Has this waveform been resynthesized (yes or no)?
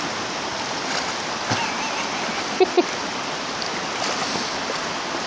no